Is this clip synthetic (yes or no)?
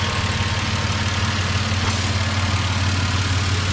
no